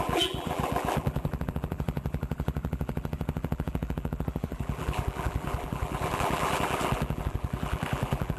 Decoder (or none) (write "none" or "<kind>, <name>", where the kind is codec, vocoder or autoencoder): vocoder, BigVGAN v2